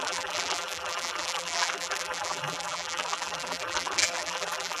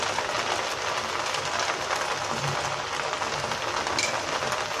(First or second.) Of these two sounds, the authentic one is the second